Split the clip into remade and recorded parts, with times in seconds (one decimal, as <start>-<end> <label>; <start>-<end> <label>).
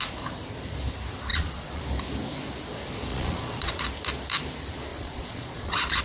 0.0-1.3 recorded; 1.3-1.8 remade; 1.8-3.1 recorded; 3.1-3.8 remade; 3.8-4.9 recorded; 4.9-6.0 remade